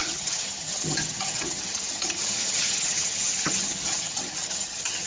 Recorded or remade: remade